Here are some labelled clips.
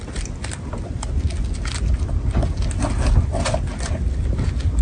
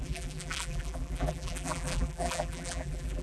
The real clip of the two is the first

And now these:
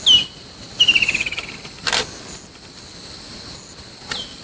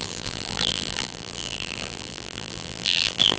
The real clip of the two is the first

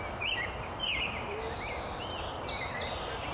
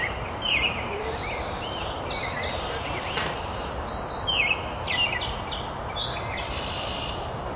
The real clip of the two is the first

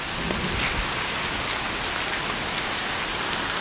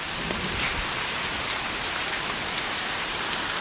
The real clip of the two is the first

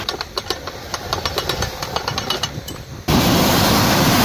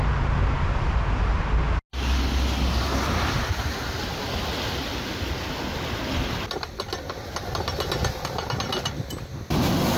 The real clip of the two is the second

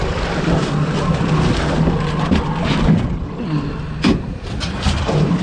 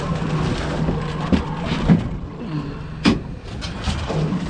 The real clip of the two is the second